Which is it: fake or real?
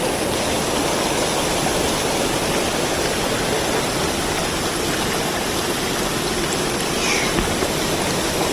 real